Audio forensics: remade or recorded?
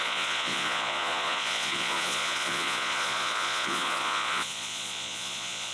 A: remade